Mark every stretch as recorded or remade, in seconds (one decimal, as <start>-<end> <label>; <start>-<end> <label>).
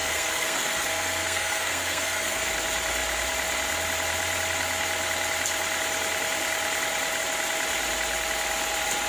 0.0-2.5 remade; 2.5-9.1 recorded